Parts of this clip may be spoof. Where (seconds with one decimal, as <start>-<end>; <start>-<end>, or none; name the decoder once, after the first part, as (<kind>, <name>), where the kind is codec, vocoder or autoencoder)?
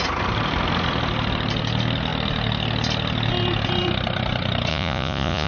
4.7-5.5 (vocoder, Vocos)